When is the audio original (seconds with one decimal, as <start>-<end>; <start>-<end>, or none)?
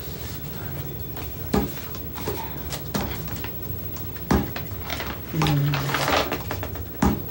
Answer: 0.0-7.3